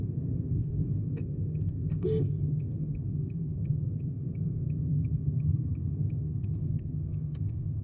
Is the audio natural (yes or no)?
no